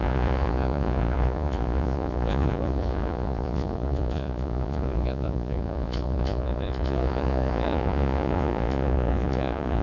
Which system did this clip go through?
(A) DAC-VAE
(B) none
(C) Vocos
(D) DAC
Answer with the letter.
C